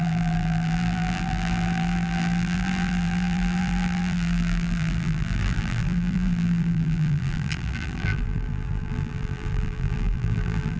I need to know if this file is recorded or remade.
remade